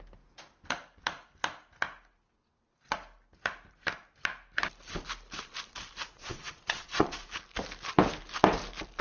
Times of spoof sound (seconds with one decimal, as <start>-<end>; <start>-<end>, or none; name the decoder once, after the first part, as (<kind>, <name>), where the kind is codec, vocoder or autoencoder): 6.1-7.3 (vocoder, Vocos)